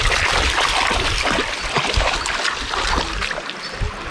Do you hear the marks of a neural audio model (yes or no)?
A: no